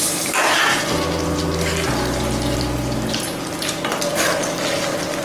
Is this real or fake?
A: real